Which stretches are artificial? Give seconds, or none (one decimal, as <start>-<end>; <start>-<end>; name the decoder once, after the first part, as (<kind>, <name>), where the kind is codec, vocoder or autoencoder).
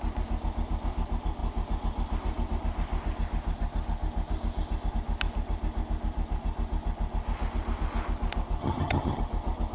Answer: 8.6-9.2 (vocoder, HiFi-GAN)